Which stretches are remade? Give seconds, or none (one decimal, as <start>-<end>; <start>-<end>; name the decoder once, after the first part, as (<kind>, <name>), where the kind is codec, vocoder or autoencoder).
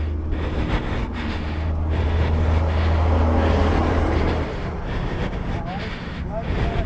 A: 3.8-4.3 (vocoder, BigVGAN v2)